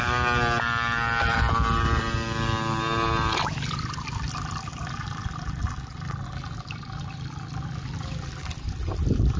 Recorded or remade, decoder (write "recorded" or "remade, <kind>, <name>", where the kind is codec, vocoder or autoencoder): recorded